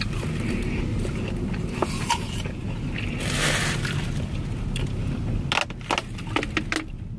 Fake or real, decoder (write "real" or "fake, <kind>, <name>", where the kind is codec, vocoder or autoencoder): real